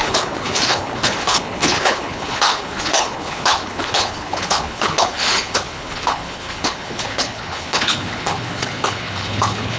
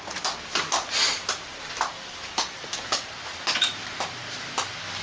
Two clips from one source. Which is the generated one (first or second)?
first